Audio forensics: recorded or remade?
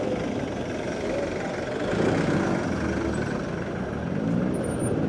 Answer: recorded